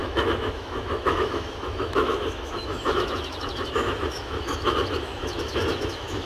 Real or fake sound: fake